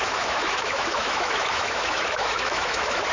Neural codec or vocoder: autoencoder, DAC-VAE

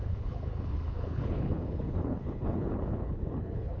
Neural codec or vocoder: codec, HILCodec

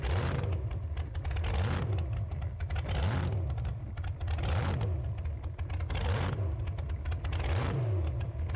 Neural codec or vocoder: none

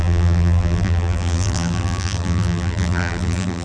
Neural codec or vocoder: vocoder, BigVGAN v2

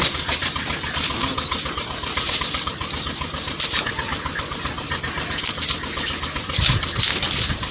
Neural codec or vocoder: none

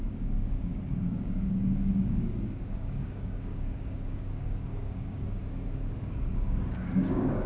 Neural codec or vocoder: codec, DAC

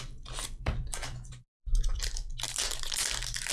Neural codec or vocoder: vocoder, BigVGAN v2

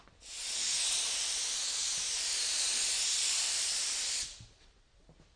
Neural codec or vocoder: none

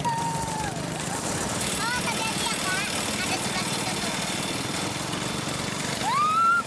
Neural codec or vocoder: none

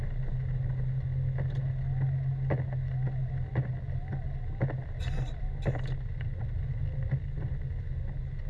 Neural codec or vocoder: none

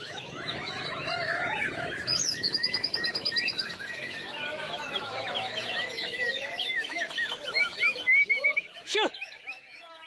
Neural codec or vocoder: autoencoder, DAC-VAE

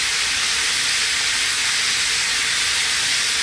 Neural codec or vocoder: none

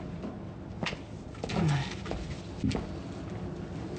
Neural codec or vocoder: none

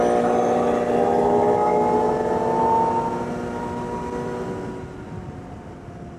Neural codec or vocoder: none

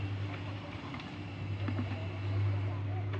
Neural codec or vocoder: none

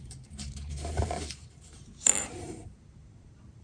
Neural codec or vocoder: vocoder, BigVGAN v2